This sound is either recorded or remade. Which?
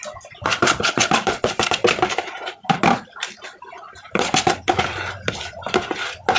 recorded